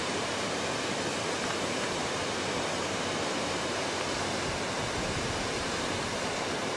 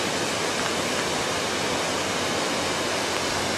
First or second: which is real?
second